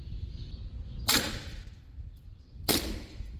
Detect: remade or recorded recorded